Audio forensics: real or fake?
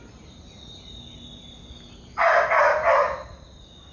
real